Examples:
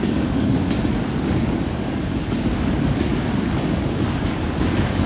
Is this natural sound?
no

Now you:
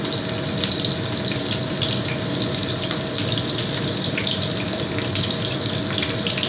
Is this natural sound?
yes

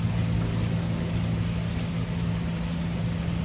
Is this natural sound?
yes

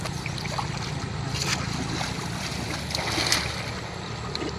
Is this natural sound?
yes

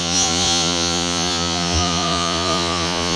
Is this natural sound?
no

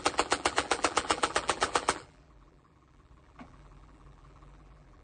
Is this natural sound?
no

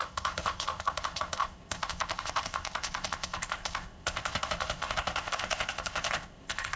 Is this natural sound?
no